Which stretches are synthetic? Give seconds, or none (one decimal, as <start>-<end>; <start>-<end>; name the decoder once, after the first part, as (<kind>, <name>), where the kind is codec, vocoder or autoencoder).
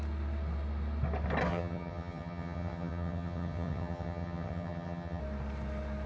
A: 1.5-5.2 (vocoder, HiFi-GAN)